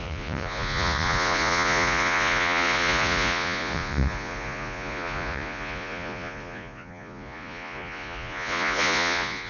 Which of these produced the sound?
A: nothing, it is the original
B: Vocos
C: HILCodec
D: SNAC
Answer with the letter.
B